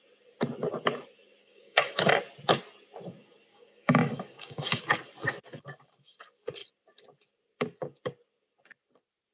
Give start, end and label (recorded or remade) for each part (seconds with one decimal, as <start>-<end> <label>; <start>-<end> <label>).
0.0-1.4 recorded; 1.4-2.1 remade; 2.1-3.5 recorded; 3.5-4.8 remade; 4.8-9.3 recorded